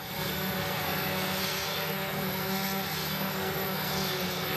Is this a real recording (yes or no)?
no